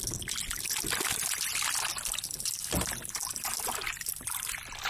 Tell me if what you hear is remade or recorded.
recorded